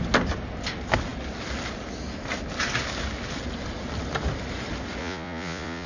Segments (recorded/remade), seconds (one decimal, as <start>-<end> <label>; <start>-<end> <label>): 0.0-5.0 recorded; 5.0-5.9 remade